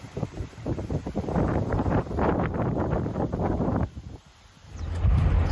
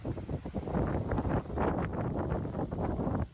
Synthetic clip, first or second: first